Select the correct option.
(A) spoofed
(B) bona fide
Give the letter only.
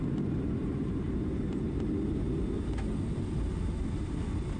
B